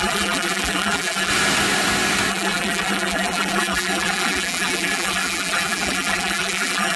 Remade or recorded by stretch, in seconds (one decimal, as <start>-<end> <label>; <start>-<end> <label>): 0.0-1.3 remade; 1.3-2.3 recorded; 2.3-7.0 remade